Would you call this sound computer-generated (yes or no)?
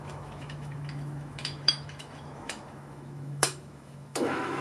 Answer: yes